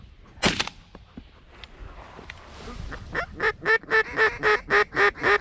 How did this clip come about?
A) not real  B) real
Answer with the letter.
B